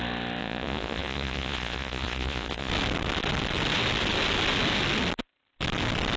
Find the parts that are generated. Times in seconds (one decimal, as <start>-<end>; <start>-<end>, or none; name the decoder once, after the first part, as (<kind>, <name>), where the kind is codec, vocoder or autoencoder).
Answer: 0.4-2.7 (vocoder, Vocos)